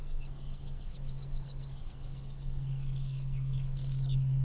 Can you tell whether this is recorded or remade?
remade